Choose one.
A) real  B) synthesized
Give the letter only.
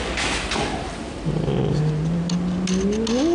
A